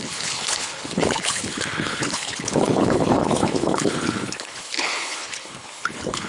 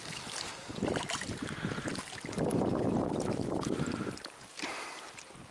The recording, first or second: second